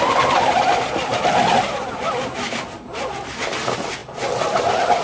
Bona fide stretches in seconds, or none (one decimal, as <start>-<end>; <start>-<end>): 0.0-5.0